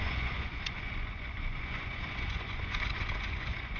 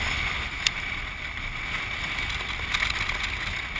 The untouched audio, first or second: second